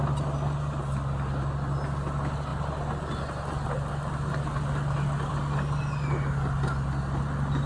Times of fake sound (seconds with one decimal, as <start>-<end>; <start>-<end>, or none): none